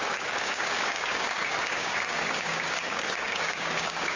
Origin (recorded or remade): remade